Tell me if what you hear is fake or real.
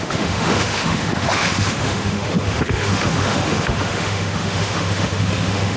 fake